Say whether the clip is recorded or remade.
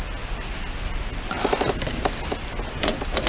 recorded